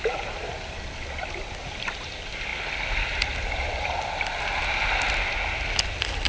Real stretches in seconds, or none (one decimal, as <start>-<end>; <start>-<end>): 0.0-6.3